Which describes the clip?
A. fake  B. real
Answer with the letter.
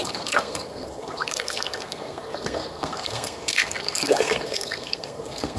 A